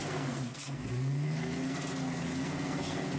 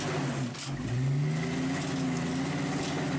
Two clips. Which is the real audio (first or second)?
second